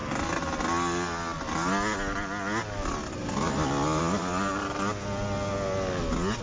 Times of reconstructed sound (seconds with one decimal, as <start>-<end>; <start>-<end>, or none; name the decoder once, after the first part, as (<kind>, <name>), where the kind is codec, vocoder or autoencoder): none